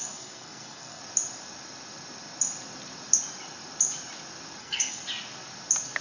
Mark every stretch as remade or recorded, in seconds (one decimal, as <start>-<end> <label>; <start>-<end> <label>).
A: 0.0-1.0 remade; 1.0-4.6 recorded; 4.6-5.0 remade; 5.0-6.0 recorded